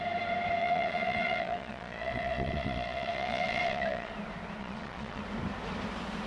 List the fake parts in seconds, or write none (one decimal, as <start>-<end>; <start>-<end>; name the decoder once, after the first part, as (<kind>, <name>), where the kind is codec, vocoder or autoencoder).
0.6-4.1 (vocoder, Vocos); 4.6-5.2